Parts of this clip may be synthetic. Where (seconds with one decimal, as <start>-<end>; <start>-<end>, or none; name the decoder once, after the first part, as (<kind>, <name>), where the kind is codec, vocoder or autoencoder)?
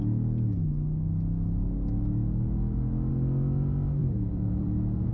4.0-5.1 (vocoder, BigVGAN v2)